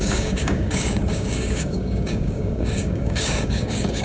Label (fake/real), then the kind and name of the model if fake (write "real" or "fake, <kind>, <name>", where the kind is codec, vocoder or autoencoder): fake, codec, DAC